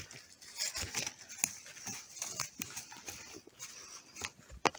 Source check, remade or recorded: recorded